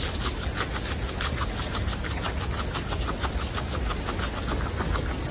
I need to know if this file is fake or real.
real